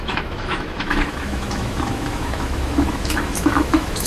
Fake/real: fake